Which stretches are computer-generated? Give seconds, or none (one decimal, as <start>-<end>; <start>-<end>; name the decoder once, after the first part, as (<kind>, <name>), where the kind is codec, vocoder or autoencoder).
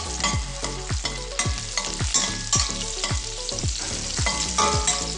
none